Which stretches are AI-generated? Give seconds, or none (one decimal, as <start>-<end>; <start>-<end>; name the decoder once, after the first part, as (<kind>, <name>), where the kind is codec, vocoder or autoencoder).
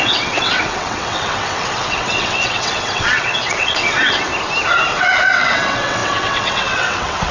0.0-4.3 (vocoder, WaveNeXt); 4.9-7.3